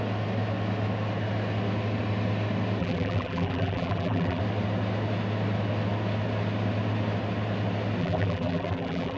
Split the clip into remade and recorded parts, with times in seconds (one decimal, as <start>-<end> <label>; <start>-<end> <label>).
0.0-2.8 recorded; 2.8-4.4 remade; 4.4-8.0 recorded; 8.0-9.2 remade